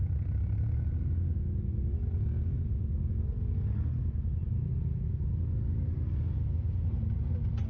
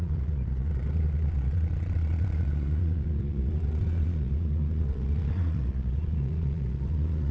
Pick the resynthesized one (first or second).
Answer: second